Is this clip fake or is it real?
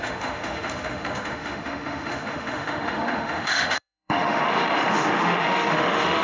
fake